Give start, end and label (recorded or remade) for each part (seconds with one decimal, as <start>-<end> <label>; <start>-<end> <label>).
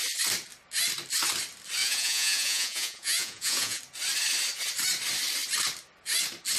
0.0-1.8 recorded; 1.8-3.8 remade; 3.8-6.6 recorded